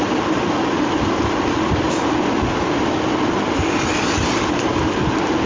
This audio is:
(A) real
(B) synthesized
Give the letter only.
A